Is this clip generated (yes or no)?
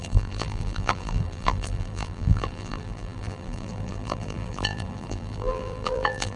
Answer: yes